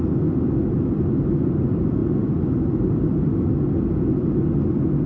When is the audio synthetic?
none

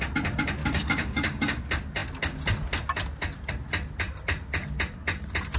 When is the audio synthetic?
0.6-1.6 (codec, DAC)

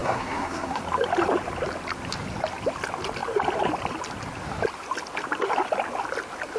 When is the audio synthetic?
0.0-0.8 (codec, SNAC)

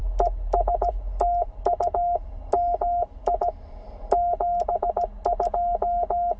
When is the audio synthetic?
none

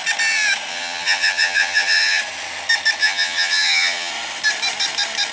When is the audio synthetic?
0.7-2.2 (vocoder, HiFi-GAN); 3.0-4.1

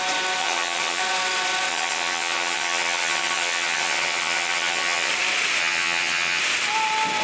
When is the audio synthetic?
0.4-1.0 (vocoder, HiFi-GAN); 1.7-5.1; 5.6-6.4

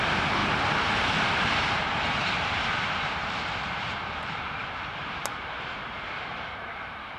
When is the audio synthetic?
0.0-7.2 (vocoder, BigVGAN v2)

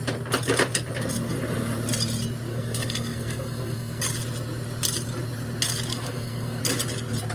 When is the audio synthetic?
2.5-4.0 (codec, SNAC); 5.9-6.6